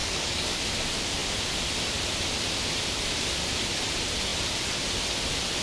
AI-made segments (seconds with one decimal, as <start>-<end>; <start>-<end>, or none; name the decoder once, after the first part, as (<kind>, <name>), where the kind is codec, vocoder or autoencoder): 0.0-0.6 (codec, DAC)